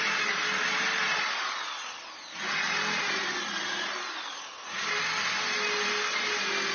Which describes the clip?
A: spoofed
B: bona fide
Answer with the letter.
B